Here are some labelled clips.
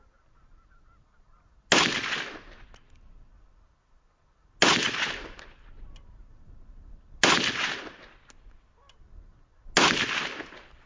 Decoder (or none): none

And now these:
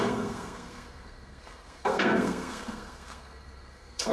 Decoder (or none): codec, SNAC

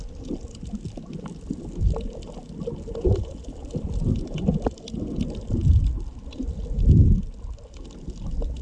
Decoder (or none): none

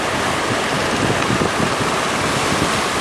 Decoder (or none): none